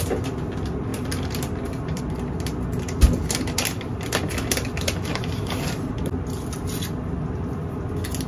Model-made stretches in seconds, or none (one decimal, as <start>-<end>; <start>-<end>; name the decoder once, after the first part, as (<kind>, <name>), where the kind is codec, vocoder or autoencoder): 0.9-2.0 (vocoder, BigVGAN v2); 3.9-5.9